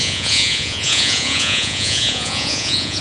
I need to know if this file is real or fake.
fake